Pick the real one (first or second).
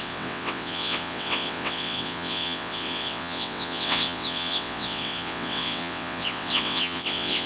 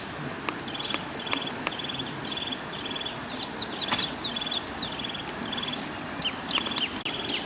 second